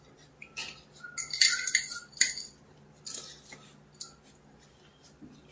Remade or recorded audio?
recorded